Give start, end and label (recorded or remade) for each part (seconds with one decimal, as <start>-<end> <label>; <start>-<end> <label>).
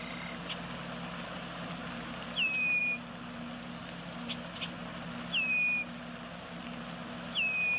0.0-7.8 recorded